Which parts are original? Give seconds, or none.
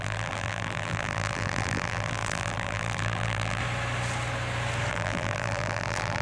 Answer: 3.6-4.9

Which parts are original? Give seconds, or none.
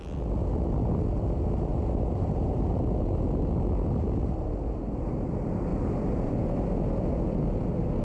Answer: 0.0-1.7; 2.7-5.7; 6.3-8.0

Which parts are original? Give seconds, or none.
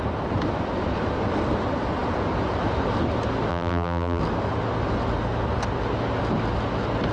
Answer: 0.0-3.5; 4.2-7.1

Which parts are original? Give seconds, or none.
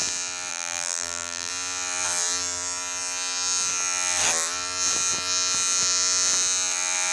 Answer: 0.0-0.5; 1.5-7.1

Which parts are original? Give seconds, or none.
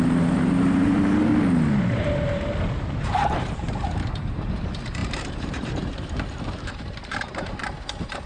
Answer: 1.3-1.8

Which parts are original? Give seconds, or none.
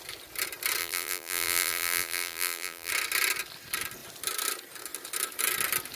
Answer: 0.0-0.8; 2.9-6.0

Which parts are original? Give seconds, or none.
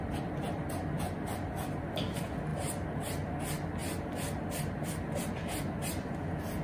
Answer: 0.0-6.6